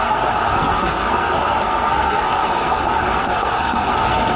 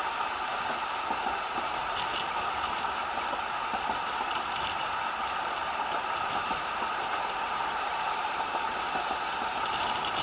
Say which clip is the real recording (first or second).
second